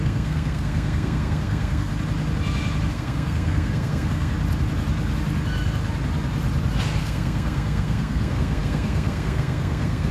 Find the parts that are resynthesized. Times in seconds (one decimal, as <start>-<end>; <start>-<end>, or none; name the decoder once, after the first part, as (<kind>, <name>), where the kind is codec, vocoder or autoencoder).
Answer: 0.0-1.9 (codec, SNAC); 2.9-4.3; 7.0-10.1